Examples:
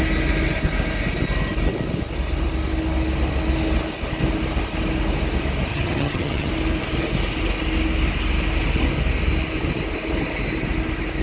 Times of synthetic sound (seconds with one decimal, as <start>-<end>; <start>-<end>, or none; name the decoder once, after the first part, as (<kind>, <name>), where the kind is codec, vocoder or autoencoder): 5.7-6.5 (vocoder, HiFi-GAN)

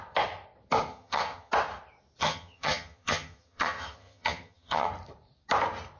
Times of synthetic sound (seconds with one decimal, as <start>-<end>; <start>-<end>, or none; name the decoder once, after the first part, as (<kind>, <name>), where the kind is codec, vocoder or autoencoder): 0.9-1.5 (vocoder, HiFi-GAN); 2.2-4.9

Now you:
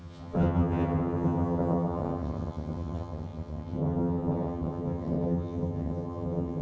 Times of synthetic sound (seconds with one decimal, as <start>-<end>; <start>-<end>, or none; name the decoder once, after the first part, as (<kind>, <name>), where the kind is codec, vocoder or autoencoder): 0.0-6.6 (vocoder, HiFi-GAN)

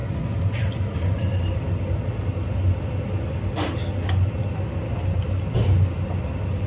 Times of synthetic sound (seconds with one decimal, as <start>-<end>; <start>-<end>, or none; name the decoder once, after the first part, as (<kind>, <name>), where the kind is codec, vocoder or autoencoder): none

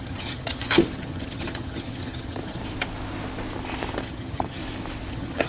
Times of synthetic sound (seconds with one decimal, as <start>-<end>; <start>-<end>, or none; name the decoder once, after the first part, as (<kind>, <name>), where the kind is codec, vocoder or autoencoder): 0.0-2.6 (vocoder, HiFi-GAN); 4.0-4.6; 5.1-5.5